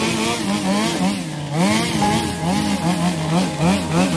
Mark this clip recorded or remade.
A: recorded